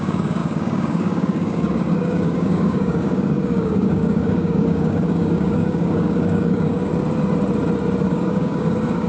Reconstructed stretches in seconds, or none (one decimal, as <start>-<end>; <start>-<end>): 0.0-6.9; 8.1-9.1